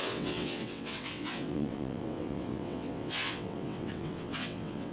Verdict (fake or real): fake